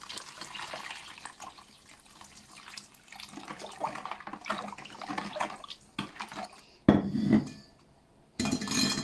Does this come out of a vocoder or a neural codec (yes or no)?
no